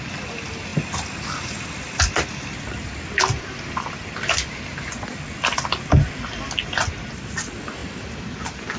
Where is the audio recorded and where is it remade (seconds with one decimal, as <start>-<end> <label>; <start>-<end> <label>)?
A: 0.0-8.8 recorded